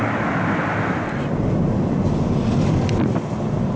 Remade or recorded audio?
recorded